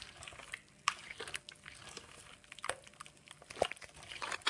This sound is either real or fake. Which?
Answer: real